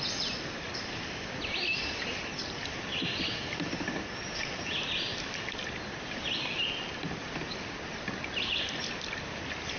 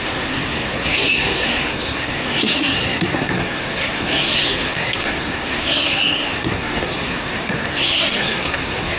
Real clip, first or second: first